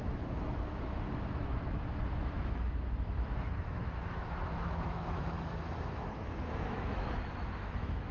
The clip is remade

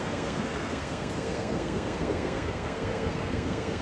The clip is remade